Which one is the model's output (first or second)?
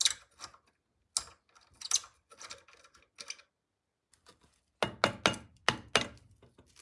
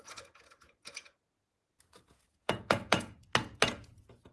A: second